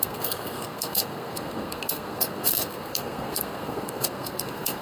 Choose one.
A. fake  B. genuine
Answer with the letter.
A